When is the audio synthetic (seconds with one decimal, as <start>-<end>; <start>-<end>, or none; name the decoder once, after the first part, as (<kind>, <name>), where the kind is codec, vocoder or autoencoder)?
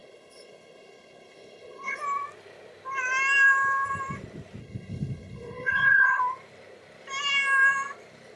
0.0-2.0 (codec, HILCodec); 4.6-6.2